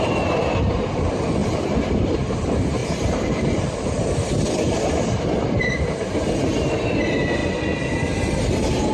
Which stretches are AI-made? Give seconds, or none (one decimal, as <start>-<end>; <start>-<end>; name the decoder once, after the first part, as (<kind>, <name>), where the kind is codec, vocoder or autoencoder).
1.4-2.3 (vocoder, BigVGAN v2); 2.8-5.6